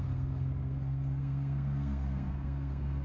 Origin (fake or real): fake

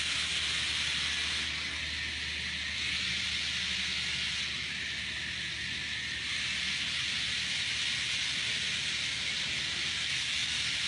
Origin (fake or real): real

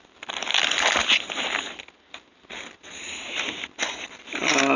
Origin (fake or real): real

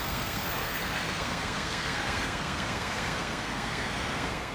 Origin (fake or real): fake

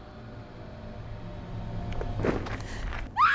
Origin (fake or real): real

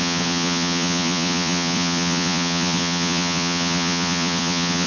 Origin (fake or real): fake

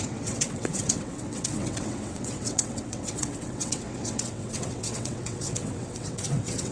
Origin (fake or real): fake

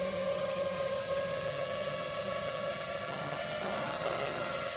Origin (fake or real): fake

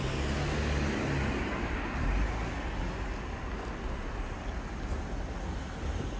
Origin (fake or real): real